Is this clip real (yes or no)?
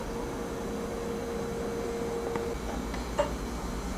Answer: yes